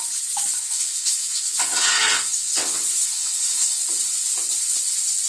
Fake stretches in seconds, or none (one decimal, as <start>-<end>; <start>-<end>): 0.6-3.8